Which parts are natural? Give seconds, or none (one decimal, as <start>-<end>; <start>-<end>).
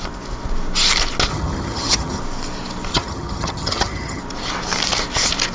0.0-1.3; 2.2-2.9; 4.2-5.5